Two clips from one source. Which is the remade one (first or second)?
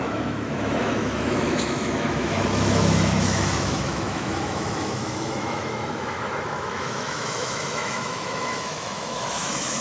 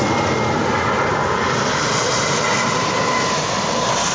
first